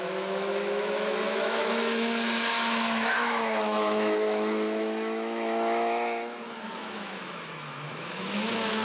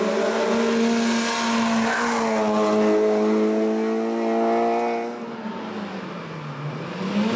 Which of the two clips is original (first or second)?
second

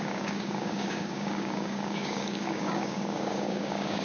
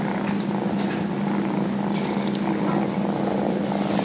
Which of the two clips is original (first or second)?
second